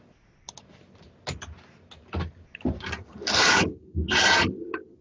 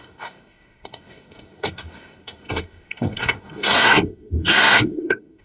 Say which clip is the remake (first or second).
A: second